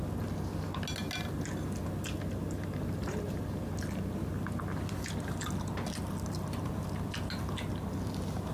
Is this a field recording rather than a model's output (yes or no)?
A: yes